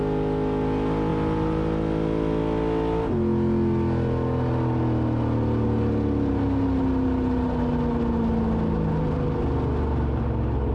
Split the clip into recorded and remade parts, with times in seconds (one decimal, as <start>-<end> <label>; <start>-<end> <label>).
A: 0.0-10.7 recorded